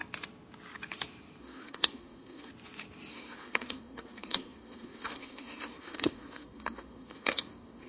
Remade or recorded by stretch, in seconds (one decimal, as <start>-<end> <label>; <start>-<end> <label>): 0.0-1.4 recorded; 1.4-2.5 remade; 2.5-3.1 recorded; 3.1-7.9 remade